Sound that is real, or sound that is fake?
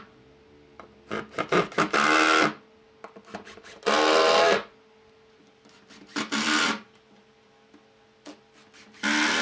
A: real